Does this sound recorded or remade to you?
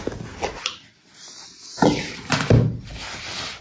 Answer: recorded